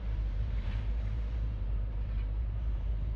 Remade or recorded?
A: remade